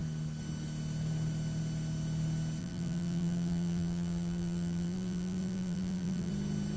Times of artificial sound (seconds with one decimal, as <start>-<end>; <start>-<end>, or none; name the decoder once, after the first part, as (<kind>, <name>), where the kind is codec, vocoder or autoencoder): 2.6-6.3 (vocoder, BigVGAN v2)